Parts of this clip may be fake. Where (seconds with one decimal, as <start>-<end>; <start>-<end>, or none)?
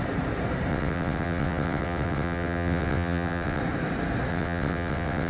0.7-3.6; 4.3-5.3